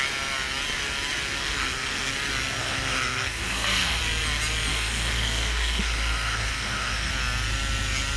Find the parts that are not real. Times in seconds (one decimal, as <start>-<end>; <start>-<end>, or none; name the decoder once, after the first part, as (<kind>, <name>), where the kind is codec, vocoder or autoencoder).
1.4-2.1 (codec, SNAC); 2.6-4.0; 4.7-7.1